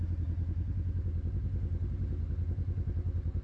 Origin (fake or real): real